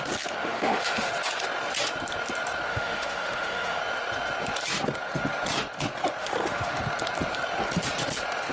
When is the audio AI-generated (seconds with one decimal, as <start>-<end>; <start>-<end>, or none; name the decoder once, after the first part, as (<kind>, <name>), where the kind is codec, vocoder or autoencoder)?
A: 0.4-1.1 (autoencoder, DAC-VAE); 2.7-3.8; 6.2-6.8